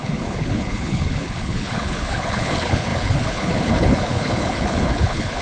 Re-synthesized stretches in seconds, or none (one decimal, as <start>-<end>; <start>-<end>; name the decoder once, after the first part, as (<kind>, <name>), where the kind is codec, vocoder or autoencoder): 0.0-5.4 (codec, HILCodec)